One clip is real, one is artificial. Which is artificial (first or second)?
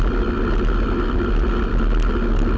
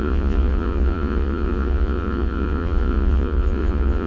second